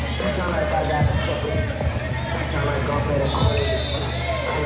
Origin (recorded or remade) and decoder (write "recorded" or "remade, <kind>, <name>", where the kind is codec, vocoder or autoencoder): recorded